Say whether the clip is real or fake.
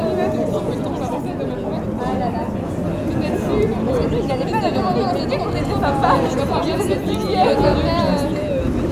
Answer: real